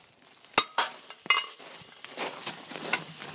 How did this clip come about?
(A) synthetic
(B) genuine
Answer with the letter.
B